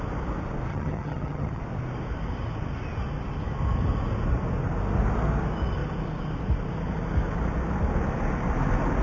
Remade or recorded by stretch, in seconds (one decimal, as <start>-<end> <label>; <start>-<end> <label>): 0.0-0.7 recorded; 0.7-1.6 remade; 1.6-9.0 recorded